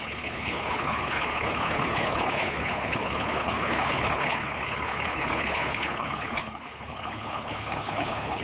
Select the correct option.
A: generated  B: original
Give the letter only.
A